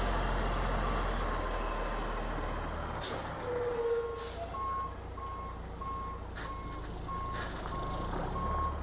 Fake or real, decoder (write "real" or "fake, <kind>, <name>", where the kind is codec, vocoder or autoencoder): real